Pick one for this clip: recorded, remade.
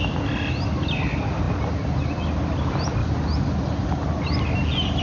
recorded